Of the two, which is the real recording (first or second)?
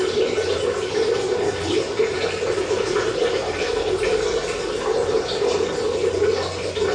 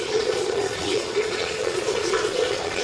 first